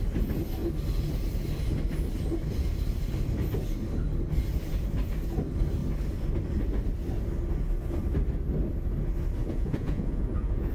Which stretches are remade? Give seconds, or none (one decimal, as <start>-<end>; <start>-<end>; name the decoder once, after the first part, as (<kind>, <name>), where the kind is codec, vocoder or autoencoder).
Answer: 9.4-10.7 (vocoder, Vocos)

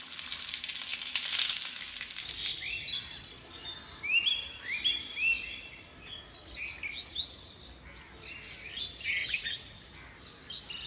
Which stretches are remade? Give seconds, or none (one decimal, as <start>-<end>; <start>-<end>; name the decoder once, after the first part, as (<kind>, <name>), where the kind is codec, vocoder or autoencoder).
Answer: 9.2-9.8 (vocoder, Vocos)

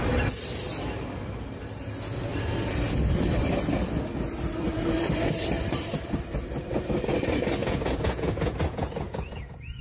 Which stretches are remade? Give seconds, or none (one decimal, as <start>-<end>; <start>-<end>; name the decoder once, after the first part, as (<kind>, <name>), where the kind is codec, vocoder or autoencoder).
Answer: 7.6-9.8 (vocoder, Vocos)

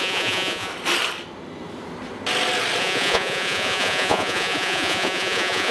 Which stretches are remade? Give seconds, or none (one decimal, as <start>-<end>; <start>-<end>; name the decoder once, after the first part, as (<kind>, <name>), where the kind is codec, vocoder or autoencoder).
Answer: 0.0-0.7 (vocoder, Vocos); 2.8-5.7

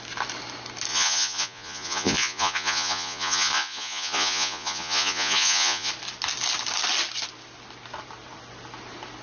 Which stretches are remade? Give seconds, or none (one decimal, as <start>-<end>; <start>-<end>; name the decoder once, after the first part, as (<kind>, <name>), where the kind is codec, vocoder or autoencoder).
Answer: 0.9-5.9 (vocoder, Vocos)

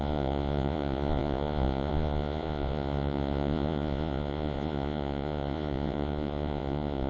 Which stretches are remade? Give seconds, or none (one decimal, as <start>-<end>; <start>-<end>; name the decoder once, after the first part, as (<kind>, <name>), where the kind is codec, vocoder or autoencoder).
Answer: 0.0-7.1 (vocoder, Vocos)

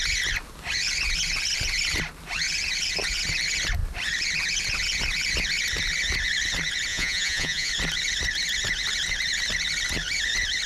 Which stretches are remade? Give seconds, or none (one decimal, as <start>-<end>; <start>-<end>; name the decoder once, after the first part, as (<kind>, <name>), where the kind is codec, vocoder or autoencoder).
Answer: 6.9-7.7 (vocoder, Vocos)